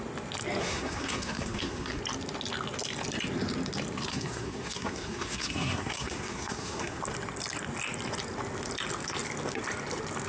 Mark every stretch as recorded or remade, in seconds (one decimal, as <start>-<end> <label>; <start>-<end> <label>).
0.0-0.6 recorded; 0.6-2.0 remade; 2.0-4.1 recorded; 4.1-7.0 remade; 7.0-10.3 recorded